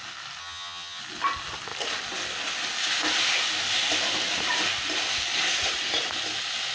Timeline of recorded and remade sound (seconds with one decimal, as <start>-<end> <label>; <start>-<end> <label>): 0.0-0.4 recorded; 0.4-1.0 remade; 1.0-6.7 recorded